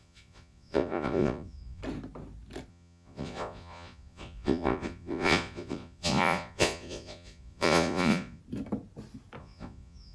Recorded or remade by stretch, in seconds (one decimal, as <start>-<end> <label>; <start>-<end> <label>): 0.0-1.8 remade; 1.8-2.7 recorded; 2.7-8.4 remade; 8.4-9.4 recorded; 9.4-10.1 remade